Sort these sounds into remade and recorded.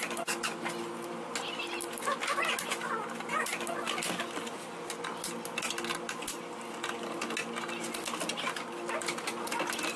recorded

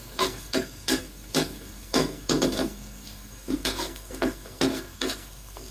remade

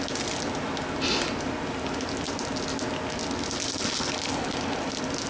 recorded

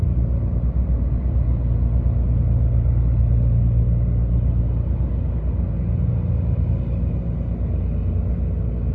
recorded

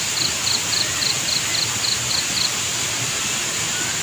recorded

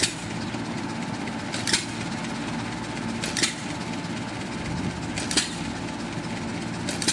recorded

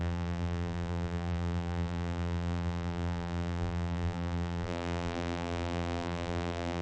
remade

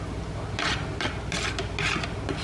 recorded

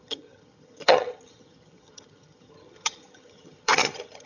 remade